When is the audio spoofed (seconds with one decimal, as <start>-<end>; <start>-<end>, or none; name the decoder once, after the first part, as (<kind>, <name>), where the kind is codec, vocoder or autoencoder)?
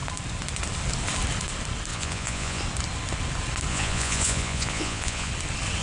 1.9-2.6 (vocoder, Vocos); 3.7-5.3